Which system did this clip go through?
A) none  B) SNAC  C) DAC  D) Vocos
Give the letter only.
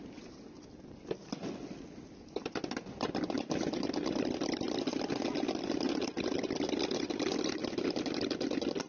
A